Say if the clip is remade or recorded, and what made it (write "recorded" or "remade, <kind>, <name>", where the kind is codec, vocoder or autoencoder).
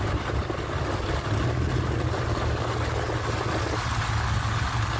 recorded